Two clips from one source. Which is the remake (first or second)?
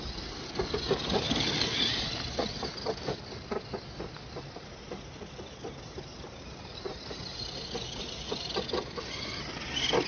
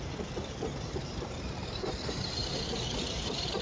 second